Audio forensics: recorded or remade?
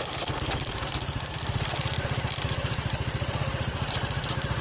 remade